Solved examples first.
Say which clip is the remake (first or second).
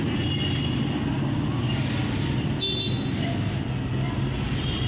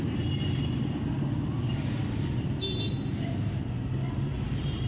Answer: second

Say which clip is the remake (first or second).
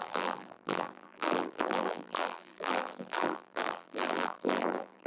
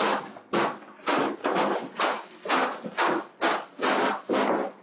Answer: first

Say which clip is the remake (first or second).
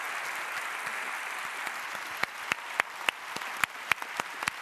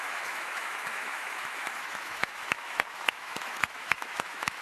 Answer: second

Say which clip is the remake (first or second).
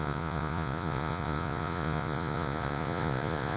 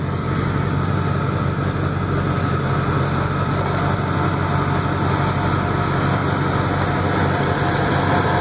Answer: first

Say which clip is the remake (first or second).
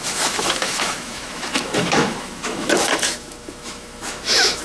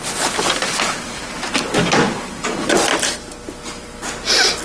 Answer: first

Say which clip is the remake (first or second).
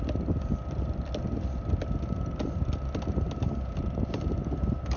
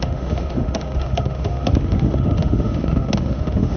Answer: second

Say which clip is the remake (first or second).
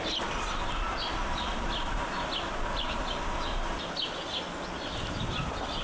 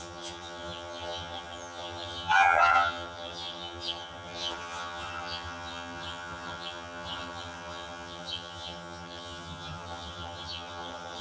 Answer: second